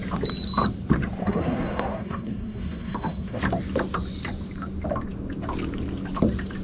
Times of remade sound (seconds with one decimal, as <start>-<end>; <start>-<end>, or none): 1.2-3.4